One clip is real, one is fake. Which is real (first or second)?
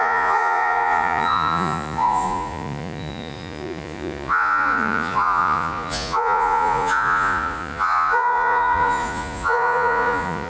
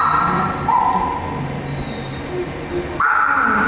second